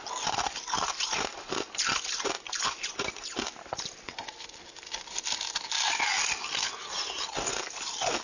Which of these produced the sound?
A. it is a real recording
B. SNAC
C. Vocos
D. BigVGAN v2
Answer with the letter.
A